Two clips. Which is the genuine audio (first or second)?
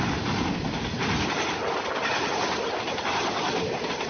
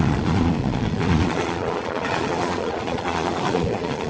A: first